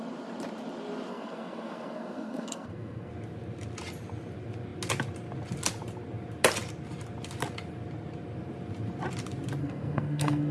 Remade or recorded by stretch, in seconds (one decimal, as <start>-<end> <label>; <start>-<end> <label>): 0.0-1.1 recorded; 1.1-3.1 remade; 3.1-9.6 recorded; 9.6-10.5 remade